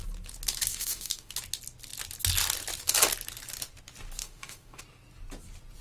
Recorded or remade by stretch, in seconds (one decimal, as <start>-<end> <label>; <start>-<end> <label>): 0.0-0.7 recorded; 0.7-1.3 remade; 1.3-4.2 recorded; 4.2-4.8 remade; 4.8-5.8 recorded

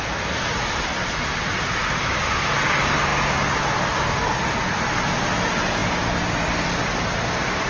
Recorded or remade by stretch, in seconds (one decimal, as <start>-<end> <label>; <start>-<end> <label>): 0.0-1.8 recorded; 1.8-2.6 remade; 2.6-7.7 recorded

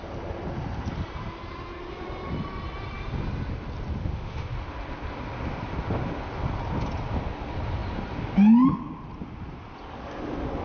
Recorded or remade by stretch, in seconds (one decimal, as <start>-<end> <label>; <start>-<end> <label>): 0.0-4.0 recorded; 4.0-4.5 remade; 4.5-10.6 recorded

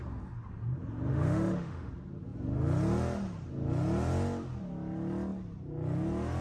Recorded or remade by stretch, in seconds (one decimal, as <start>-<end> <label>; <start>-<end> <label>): 0.0-1.1 recorded; 1.1-1.9 remade; 1.9-6.4 recorded